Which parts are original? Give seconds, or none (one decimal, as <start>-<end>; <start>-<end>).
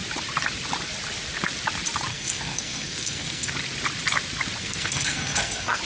0.0-2.1; 3.5-4.6